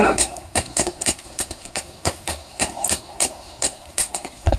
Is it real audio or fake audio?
fake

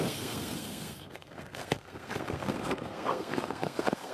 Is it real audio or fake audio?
fake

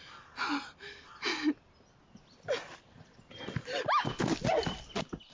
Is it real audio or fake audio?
real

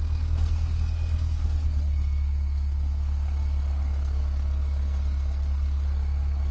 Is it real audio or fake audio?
fake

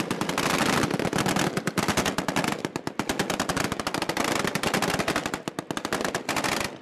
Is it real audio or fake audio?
real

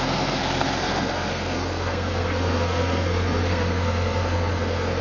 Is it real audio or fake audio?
fake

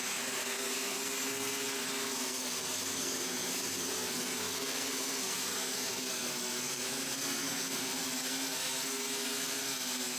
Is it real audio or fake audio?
fake